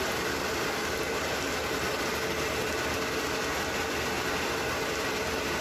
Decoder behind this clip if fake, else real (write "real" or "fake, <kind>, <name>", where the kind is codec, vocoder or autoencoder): real